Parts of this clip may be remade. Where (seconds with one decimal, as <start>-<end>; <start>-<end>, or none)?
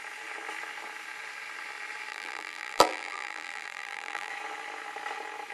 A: 2.1-4.3